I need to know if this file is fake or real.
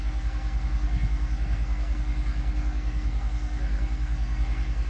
fake